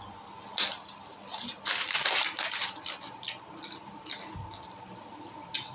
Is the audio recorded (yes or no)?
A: yes